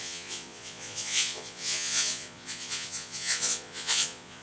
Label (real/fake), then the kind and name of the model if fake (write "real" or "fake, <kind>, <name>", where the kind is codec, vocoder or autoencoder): fake, vocoder, Vocos